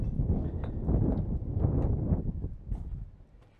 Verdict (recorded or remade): recorded